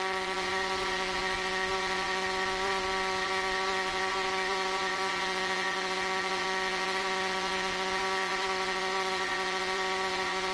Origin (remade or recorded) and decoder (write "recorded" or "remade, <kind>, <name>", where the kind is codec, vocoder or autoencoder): remade, vocoder, Vocos